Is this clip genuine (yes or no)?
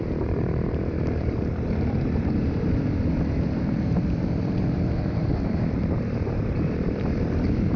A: no